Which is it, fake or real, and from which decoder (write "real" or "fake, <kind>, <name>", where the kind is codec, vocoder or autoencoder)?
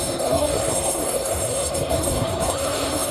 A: fake, codec, SNAC